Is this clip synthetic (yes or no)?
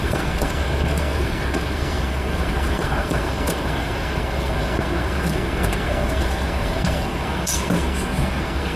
yes